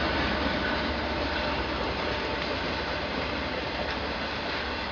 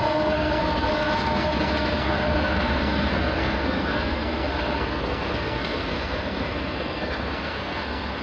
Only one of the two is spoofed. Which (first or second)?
second